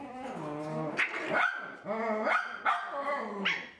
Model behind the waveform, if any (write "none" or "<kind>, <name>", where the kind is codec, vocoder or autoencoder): none